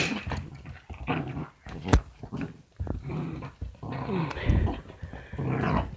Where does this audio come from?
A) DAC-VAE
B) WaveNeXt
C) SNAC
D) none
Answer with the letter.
D